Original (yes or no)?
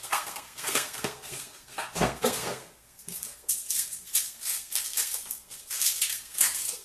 no